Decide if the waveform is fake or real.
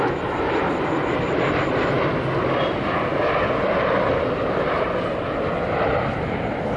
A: real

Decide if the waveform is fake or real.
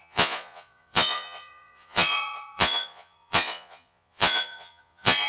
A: fake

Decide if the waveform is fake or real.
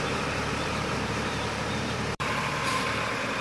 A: fake